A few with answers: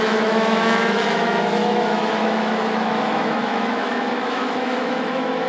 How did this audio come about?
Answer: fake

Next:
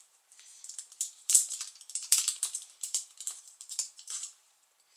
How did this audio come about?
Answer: fake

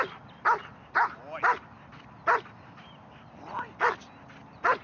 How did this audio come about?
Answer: real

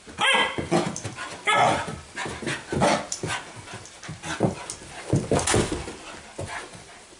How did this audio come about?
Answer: real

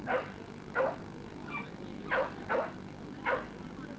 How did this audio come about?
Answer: real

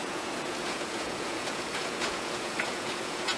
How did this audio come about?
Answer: fake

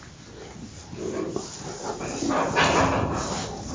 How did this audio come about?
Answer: real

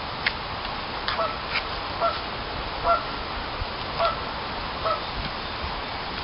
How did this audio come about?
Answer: real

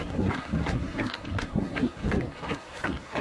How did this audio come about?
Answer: fake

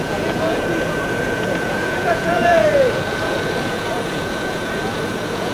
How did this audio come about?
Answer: fake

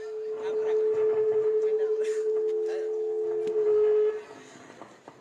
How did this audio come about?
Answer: real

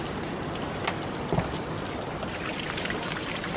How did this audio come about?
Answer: real